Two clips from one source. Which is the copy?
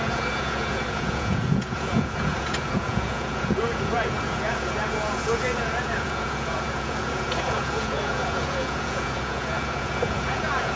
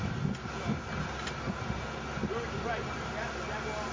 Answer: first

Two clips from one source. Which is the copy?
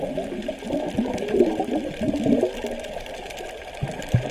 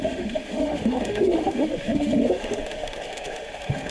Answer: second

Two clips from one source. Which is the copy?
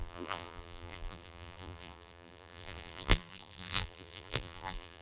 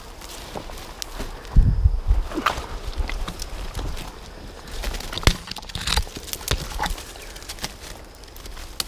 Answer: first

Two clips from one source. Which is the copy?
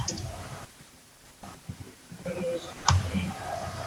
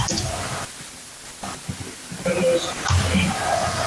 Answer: first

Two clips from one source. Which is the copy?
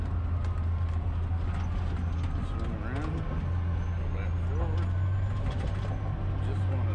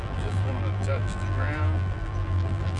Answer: second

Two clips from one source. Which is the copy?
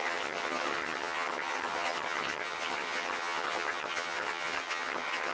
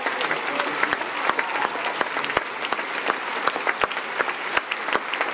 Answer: first